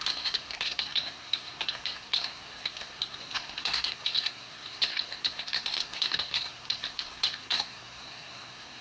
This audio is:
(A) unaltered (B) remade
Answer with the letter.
B